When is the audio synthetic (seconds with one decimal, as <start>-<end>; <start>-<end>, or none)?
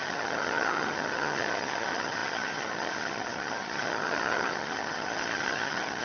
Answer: 0.0-6.0